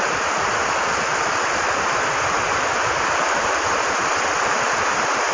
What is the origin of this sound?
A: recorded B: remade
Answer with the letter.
A